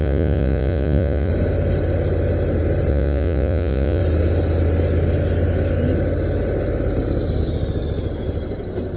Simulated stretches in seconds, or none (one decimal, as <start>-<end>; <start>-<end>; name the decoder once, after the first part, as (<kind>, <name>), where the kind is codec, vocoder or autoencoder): 0.0-1.3 (vocoder, Vocos); 2.9-4.0